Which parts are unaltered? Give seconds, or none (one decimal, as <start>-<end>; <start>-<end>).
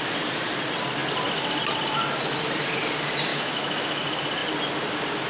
0.0-3.3; 4.0-5.3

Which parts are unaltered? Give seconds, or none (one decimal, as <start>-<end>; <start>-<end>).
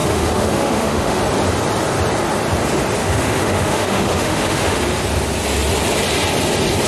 1.2-3.0; 4.8-6.9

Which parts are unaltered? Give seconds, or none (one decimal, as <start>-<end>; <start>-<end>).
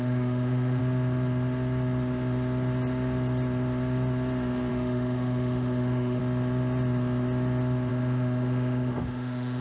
0.8-4.7; 6.2-7.9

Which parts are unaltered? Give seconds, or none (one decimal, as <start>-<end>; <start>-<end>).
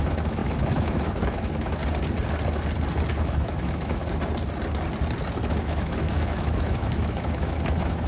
1.8-3.2; 4.0-5.5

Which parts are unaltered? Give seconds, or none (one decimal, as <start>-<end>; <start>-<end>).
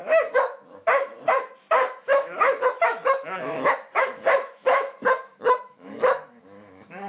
none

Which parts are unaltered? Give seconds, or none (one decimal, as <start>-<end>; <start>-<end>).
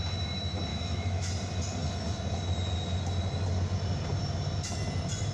0.0-0.7; 1.3-5.3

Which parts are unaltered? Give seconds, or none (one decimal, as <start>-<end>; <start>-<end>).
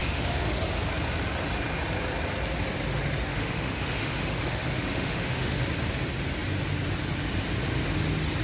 0.6-3.3; 5.6-8.4